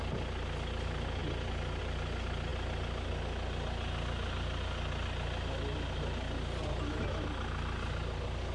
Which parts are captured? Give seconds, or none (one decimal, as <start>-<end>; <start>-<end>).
0.0-8.5